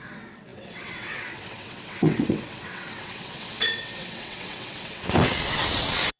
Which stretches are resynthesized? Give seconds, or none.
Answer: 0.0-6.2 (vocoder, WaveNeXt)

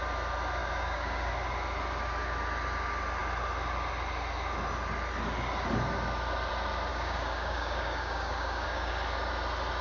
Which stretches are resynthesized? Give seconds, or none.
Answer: 0.6-1.3 (codec, DAC); 6.9-8.9

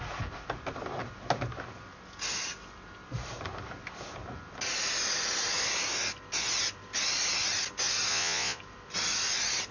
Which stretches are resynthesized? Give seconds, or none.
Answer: 8.1-8.6 (vocoder, Vocos)

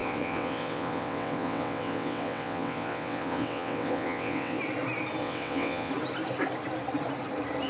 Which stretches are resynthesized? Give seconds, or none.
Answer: 0.0-4.6 (vocoder, WaveNeXt); 5.2-5.9

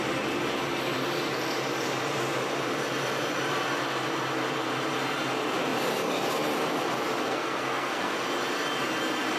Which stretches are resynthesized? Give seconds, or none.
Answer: 7.2-8.2 (codec, SNAC)

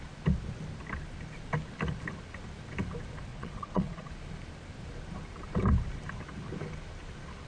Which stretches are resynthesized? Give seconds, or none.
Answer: 3.3-4.1 (vocoder, Vocos)